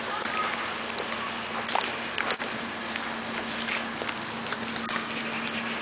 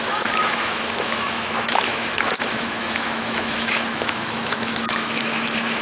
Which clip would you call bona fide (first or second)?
first